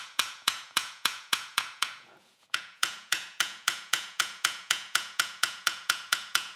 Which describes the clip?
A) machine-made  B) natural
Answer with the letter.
A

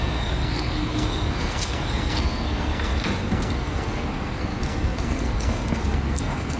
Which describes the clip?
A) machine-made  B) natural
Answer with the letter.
A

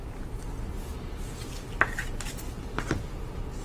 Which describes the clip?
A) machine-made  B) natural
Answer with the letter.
B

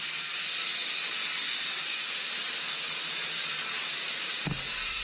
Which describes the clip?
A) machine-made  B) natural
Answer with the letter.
B